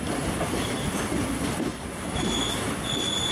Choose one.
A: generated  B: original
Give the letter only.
B